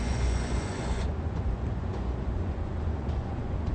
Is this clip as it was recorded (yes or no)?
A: no